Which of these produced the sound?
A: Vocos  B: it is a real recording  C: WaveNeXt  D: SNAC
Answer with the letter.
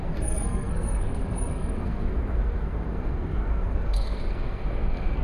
D